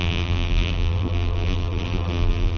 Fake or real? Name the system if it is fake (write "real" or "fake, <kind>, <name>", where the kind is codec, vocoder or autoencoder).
fake, vocoder, BigVGAN v2